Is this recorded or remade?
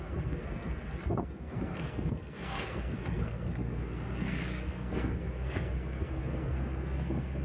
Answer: remade